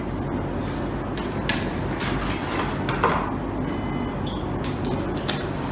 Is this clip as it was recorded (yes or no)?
yes